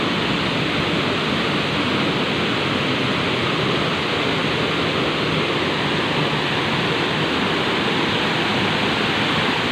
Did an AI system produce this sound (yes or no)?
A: no